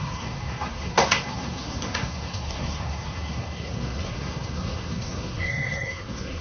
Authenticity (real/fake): fake